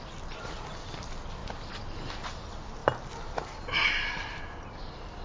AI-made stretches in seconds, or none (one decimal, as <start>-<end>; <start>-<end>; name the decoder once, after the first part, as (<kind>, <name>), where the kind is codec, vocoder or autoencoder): none